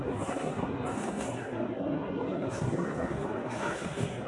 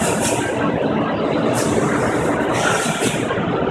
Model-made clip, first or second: first